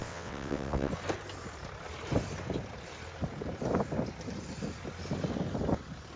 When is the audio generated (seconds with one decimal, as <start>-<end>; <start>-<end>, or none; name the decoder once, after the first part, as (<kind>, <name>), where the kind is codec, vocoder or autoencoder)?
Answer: 0.0-0.9 (vocoder, WaveNeXt)